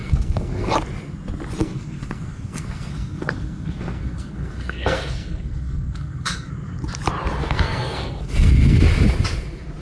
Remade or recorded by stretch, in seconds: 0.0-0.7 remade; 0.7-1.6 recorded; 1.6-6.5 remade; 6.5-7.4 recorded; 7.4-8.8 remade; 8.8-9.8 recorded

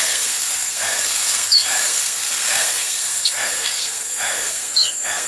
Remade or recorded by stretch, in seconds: 0.0-5.3 remade

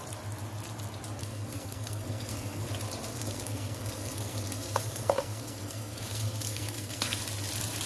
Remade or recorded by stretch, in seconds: 0.0-1.2 recorded; 1.2-2.7 remade; 2.7-3.1 recorded; 3.1-7.2 remade; 7.2-7.9 recorded

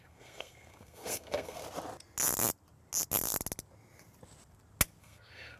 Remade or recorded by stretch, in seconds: 0.0-1.6 remade; 1.6-5.0 recorded; 5.0-5.6 remade

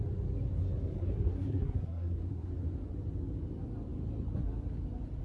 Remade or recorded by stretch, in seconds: 0.0-0.9 recorded; 0.9-2.5 remade; 2.5-5.2 recorded

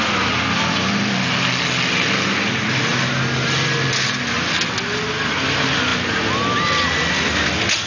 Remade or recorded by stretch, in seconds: 0.0-7.9 recorded

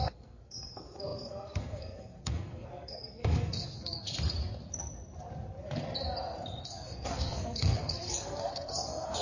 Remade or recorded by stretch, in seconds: 0.0-4.1 remade; 4.1-6.6 recorded; 6.6-9.2 remade